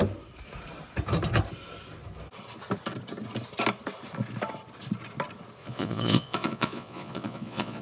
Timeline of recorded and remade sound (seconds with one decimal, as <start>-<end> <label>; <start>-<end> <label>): 0.0-5.6 recorded; 5.6-7.8 remade